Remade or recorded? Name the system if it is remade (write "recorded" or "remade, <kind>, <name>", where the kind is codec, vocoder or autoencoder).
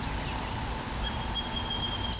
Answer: recorded